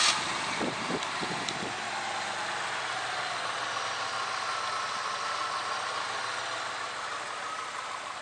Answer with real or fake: real